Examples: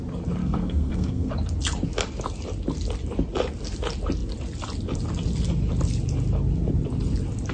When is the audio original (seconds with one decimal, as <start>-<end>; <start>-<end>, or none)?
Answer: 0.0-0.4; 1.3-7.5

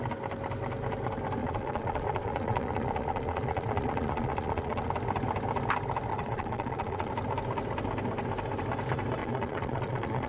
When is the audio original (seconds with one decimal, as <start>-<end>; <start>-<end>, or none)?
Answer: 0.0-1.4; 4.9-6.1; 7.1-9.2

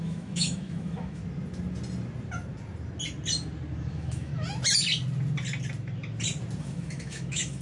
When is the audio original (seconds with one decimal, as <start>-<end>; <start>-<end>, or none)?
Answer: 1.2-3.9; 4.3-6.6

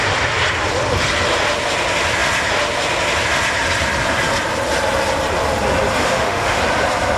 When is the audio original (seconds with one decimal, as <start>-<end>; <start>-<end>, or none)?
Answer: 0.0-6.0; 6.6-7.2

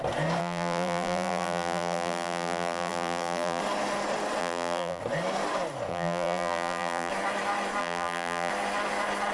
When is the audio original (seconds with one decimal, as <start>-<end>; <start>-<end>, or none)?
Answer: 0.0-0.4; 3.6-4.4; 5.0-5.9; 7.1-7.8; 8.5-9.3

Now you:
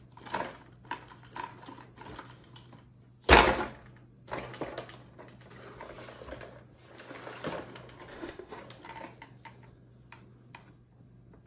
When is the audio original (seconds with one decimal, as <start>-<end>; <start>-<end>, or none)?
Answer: 0.0-8.1; 8.6-11.5

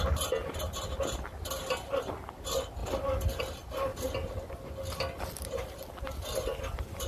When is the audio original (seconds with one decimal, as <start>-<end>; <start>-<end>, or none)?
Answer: 0.0-7.1